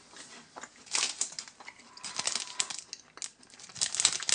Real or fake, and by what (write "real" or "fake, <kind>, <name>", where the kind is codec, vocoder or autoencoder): real